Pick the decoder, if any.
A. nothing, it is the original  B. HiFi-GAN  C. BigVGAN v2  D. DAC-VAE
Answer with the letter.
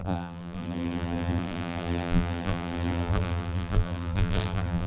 C